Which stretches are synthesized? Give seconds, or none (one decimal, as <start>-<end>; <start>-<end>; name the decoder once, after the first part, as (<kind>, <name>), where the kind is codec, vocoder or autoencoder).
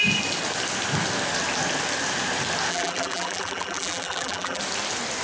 2.7-4.6 (vocoder, BigVGAN v2)